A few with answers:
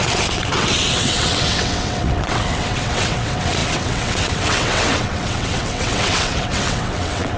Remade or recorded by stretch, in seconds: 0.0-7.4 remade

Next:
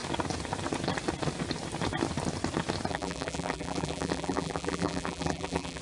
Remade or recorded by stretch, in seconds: 0.0-2.9 recorded; 2.9-5.8 remade